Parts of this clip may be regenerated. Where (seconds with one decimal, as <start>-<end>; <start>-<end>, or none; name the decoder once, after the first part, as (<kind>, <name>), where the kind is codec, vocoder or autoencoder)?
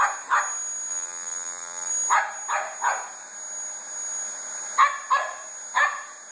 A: 0.9-1.9 (vocoder, BigVGAN v2)